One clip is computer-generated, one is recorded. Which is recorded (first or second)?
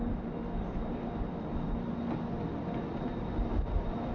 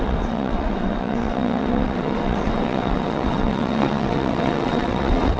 first